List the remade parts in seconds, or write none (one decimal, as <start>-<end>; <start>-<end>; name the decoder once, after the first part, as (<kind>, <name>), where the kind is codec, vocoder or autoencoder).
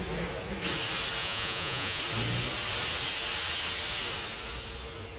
1.2-2.0 (vocoder, Vocos)